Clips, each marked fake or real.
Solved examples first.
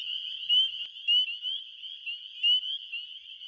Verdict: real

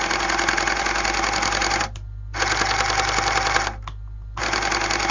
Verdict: real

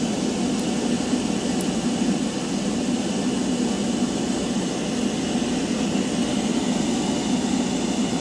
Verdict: real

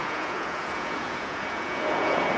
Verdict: fake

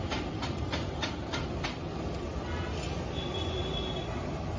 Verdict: real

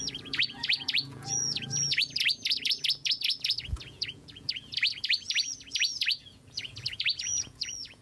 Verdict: fake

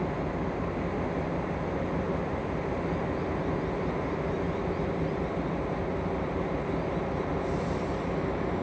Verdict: real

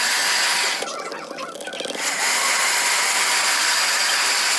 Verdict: real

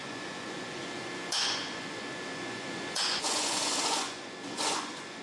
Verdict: fake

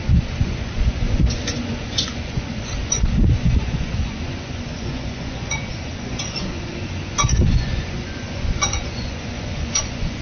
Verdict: fake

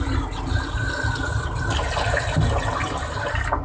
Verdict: real